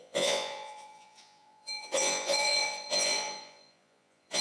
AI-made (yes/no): yes